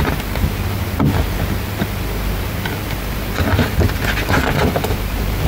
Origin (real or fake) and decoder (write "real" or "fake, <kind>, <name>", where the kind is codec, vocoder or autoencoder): fake, vocoder, BigVGAN v2